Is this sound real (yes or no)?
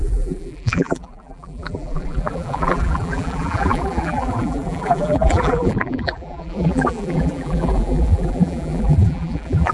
no